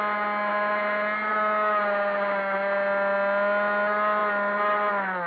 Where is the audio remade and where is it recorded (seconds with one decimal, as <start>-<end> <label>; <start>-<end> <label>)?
0.0-5.3 recorded